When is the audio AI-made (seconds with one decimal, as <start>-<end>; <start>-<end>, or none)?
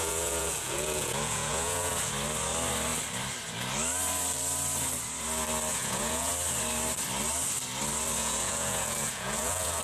0.0-2.1; 5.7-6.3; 8.2-9.8